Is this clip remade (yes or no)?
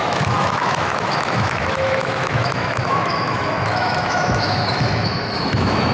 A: yes